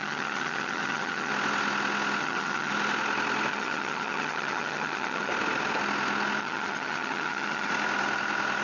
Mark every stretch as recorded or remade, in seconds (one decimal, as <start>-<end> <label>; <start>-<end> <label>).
0.0-1.3 remade; 1.3-2.2 recorded; 2.2-2.7 remade; 2.7-3.5 recorded; 3.5-5.3 remade; 5.3-6.4 recorded; 6.4-7.7 remade; 7.7-8.6 recorded